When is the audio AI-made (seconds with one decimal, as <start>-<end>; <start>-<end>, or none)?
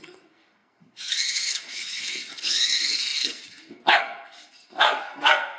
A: 0.0-5.6